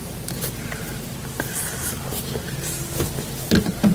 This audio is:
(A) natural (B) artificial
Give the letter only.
A